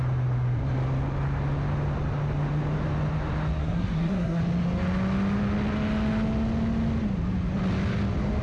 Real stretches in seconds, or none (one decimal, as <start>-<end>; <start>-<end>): 0.0-3.6; 4.4-8.4

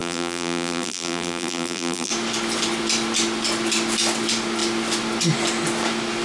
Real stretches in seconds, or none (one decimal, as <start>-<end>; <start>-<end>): 2.1-6.2

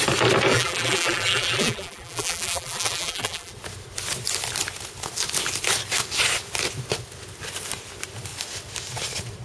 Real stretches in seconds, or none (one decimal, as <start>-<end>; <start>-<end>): 0.0-0.5; 3.5-9.4

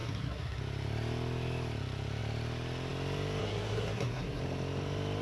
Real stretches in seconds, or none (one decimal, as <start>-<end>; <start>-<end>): 0.6-3.4; 4.4-5.2

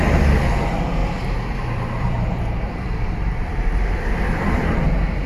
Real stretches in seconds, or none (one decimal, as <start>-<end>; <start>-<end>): 0.0-1.0; 4.2-5.3

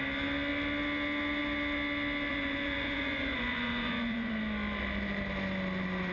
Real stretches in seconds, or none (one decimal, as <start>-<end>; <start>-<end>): 0.0-2.3; 4.3-6.1

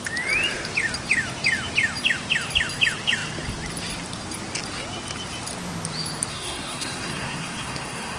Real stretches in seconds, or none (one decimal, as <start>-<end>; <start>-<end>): 0.0-6.3